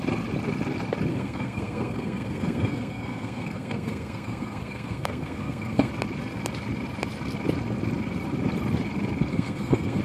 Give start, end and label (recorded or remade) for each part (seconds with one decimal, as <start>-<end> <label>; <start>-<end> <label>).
0.0-1.1 recorded; 1.1-5.9 remade; 5.9-9.3 recorded; 9.3-10.0 remade